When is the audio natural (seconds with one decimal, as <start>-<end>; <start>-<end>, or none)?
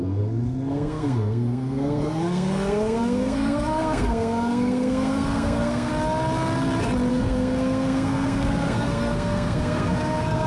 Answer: 5.9-7.1